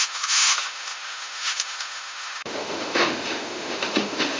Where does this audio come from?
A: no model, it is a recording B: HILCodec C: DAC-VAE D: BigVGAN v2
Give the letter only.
C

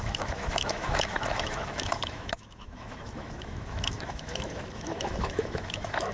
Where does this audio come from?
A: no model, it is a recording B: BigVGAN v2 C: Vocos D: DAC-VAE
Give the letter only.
D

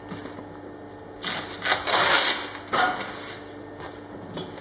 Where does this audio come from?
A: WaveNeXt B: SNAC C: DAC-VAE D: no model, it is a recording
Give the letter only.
D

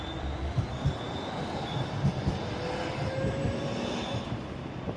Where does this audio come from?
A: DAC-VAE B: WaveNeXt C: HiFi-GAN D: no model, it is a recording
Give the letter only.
D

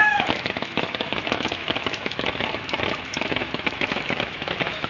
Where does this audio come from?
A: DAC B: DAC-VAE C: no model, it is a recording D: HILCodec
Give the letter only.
B